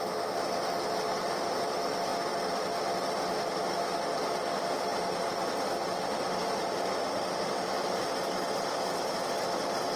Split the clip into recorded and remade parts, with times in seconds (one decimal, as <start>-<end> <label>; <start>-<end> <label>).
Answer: 0.0-4.9 recorded; 4.9-9.3 remade; 9.3-10.0 recorded